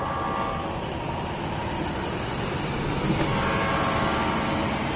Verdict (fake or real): real